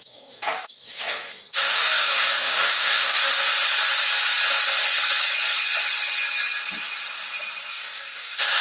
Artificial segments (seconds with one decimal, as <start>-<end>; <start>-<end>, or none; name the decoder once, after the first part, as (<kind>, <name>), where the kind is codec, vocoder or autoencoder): 0.0-3.2 (codec, DAC); 7.7-8.6